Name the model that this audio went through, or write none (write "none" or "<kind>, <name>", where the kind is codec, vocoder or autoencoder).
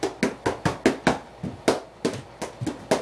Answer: none